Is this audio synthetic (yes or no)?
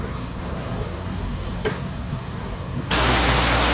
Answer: yes